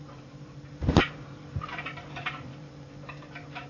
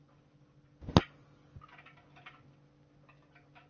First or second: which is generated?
first